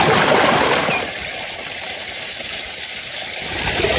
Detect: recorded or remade recorded